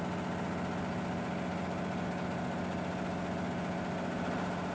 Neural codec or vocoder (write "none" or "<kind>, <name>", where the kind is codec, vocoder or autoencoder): none